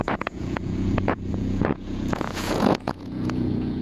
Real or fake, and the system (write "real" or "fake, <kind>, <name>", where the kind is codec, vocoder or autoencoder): fake, vocoder, Vocos